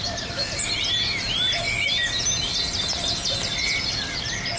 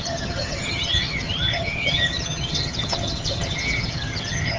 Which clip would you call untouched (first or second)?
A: first